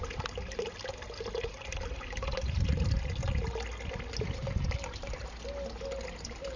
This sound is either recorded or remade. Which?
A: recorded